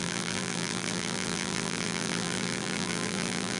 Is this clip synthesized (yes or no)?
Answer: yes